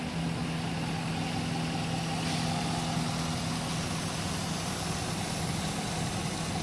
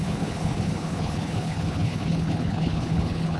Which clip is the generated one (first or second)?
second